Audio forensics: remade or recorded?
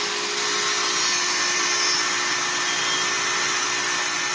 recorded